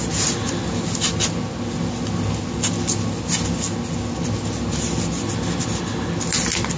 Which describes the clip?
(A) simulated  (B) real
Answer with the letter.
B